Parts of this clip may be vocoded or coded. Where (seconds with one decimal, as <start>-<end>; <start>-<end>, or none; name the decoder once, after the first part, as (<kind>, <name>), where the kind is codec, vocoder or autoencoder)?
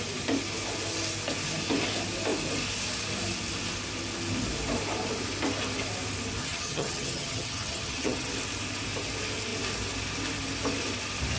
6.4-8.3 (vocoder, HiFi-GAN)